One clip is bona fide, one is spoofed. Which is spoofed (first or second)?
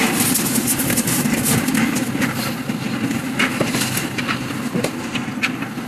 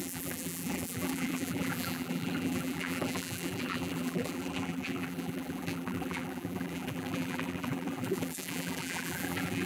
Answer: second